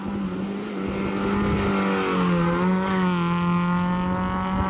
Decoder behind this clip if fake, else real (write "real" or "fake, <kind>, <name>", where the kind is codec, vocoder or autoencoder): real